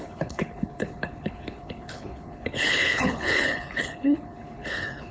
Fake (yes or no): yes